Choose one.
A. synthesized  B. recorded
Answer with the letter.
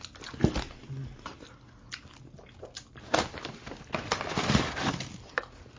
B